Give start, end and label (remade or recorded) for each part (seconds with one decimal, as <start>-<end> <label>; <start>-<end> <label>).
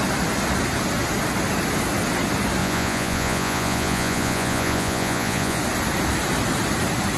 0.0-2.6 recorded; 2.6-5.6 remade; 5.6-7.2 recorded